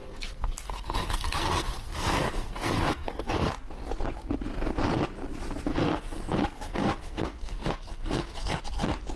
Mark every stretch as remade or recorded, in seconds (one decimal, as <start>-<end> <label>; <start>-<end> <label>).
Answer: 0.0-3.5 remade; 3.5-5.7 recorded; 5.7-8.6 remade; 8.6-9.2 recorded